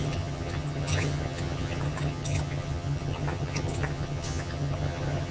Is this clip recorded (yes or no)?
no